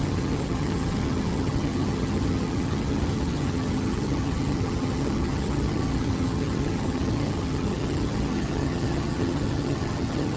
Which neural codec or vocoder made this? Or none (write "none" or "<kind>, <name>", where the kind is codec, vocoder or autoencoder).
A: vocoder, HiFi-GAN